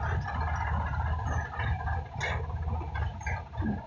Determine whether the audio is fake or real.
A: real